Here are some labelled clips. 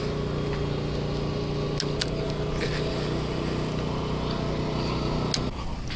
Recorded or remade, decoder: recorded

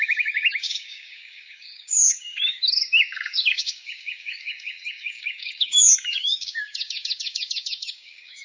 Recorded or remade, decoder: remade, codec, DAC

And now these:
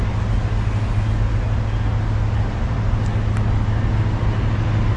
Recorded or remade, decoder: recorded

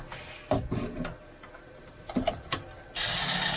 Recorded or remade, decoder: recorded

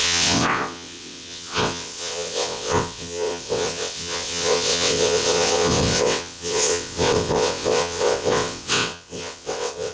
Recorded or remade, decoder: remade, vocoder, WaveNeXt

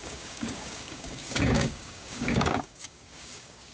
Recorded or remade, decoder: remade, codec, DAC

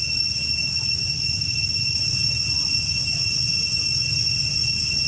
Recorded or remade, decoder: recorded